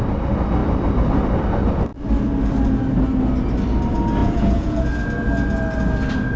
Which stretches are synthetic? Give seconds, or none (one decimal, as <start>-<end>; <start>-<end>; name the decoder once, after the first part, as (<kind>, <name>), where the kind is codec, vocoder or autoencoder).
4.2-4.8 (vocoder, Vocos)

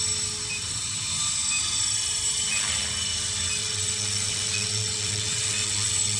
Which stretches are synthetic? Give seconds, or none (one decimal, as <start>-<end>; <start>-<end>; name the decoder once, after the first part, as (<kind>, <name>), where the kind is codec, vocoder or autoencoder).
3.6-6.2 (vocoder, WaveNeXt)

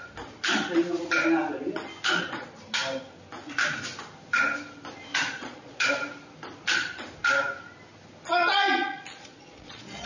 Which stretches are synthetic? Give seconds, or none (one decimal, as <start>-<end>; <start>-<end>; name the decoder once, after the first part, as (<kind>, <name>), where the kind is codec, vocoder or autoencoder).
5.1-5.9 (vocoder, Vocos); 8.4-10.1

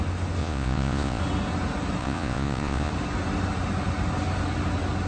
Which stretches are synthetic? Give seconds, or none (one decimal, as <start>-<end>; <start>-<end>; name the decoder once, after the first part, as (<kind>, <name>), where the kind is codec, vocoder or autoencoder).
0.4-1.2 (vocoder, Vocos); 2.0-2.9

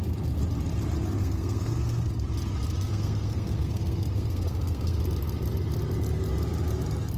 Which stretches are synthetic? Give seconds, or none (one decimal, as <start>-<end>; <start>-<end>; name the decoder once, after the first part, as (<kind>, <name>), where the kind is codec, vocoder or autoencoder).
1.2-2.1 (codec, SNAC); 2.9-5.0